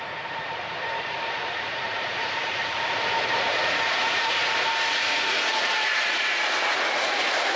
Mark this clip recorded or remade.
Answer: remade